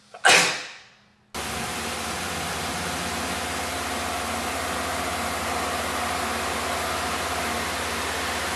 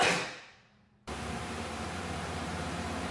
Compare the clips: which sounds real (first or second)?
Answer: first